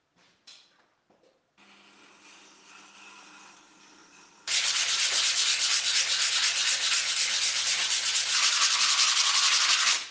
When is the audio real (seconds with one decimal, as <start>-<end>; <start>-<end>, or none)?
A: 0.0-10.1